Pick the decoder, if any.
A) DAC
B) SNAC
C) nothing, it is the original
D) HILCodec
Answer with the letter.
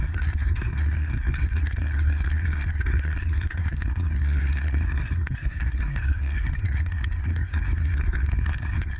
B